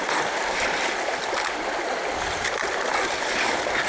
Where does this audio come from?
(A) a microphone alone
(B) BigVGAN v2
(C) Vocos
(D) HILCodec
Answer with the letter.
A